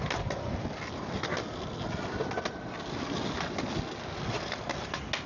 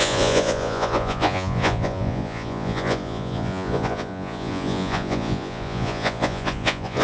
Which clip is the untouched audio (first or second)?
first